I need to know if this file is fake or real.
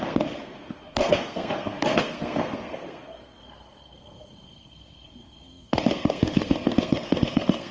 fake